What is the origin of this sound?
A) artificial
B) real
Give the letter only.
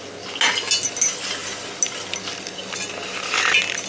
B